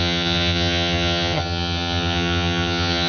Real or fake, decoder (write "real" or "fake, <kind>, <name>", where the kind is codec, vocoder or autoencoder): fake, vocoder, HiFi-GAN